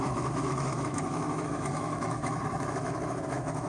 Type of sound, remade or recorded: remade